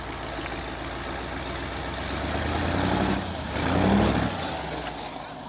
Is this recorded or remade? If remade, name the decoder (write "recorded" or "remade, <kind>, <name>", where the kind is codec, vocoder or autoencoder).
recorded